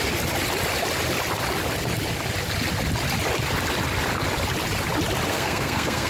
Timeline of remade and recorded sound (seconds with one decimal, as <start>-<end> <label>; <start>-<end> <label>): 0.0-5.3 recorded; 5.3-6.1 remade